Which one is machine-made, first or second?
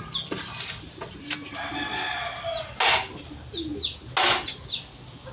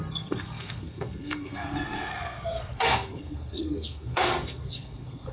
second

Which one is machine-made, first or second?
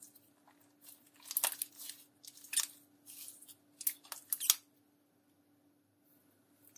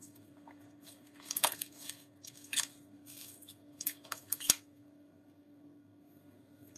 second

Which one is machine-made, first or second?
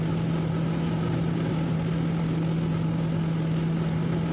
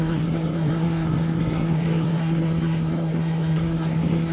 second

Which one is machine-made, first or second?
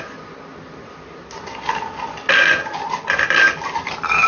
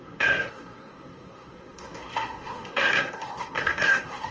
second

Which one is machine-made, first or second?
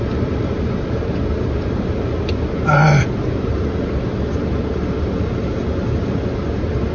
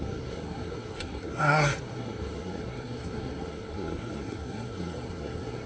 second